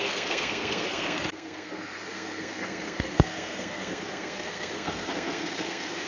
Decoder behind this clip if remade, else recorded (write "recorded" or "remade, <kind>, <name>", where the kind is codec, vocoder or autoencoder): remade, codec, SNAC